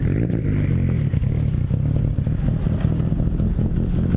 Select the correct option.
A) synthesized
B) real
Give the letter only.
B